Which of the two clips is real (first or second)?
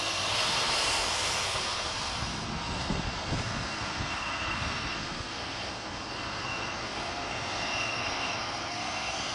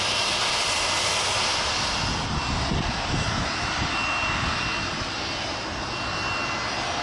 second